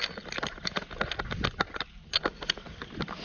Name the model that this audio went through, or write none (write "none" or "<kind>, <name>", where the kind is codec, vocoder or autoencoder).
none